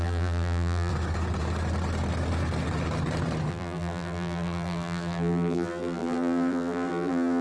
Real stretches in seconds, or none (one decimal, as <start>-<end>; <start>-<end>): 0.9-3.5